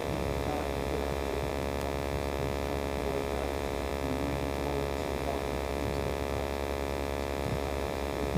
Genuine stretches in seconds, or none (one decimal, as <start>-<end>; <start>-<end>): 1.5-3.0; 3.9-5.0; 5.7-7.5